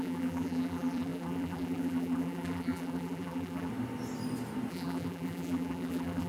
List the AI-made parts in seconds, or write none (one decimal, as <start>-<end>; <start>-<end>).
0.0-3.7; 4.7-6.3